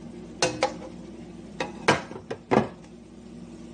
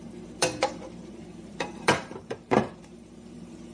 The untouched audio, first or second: first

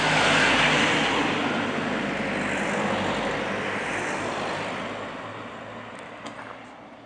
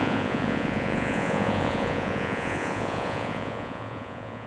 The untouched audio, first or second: first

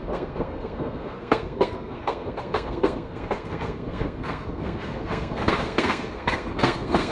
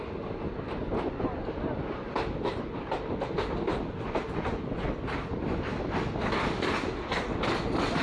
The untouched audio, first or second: second